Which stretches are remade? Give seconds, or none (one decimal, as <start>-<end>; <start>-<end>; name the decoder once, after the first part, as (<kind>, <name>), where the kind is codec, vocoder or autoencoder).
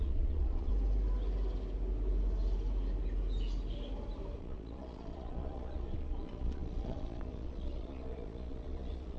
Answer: 0.0-0.7 (vocoder, Vocos); 4.4-9.2